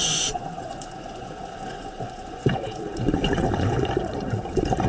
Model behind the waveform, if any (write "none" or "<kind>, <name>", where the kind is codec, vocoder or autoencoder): vocoder, Vocos